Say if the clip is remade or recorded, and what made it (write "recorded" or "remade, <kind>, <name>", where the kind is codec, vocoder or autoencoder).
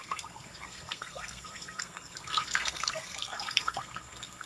remade, codec, SNAC